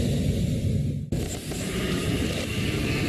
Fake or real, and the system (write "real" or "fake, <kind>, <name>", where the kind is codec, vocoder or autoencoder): real